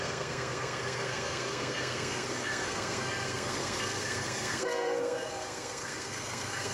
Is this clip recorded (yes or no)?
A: no